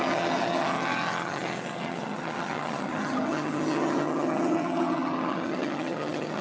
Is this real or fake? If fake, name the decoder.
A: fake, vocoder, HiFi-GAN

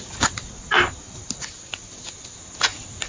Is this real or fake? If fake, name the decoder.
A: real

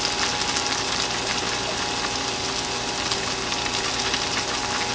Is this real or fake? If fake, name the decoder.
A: real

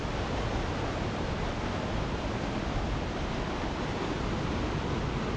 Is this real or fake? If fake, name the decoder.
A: real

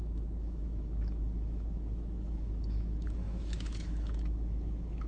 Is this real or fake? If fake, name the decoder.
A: fake, autoencoder, DAC-VAE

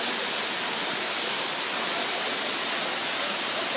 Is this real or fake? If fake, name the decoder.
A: real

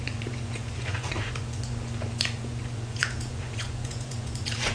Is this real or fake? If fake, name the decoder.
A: fake, vocoder, Vocos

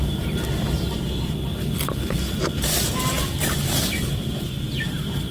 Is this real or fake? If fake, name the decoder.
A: real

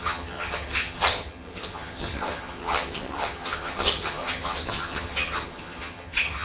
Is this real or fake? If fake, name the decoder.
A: fake, vocoder, HiFi-GAN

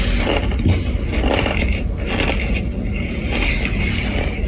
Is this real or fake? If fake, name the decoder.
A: real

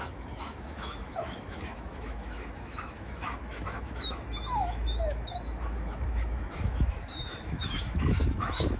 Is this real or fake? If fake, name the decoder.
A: fake, autoencoder, DAC-VAE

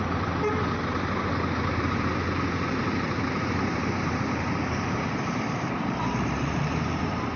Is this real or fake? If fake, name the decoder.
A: fake, vocoder, BigVGAN v2